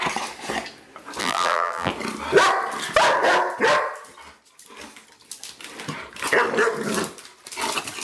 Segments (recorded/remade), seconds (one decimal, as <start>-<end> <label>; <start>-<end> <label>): 0.0-1.2 recorded; 1.2-1.9 remade; 1.9-8.0 recorded